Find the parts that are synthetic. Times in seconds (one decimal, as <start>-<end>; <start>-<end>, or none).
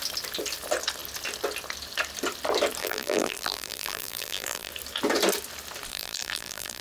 2.8-4.7; 5.9-6.8